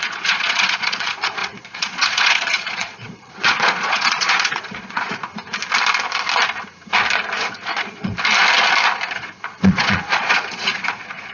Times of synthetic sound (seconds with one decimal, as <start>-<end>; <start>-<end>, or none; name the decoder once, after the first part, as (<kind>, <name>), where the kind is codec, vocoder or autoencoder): 0.0-5.3 (vocoder, Vocos); 7.5-8.1; 9.2-11.3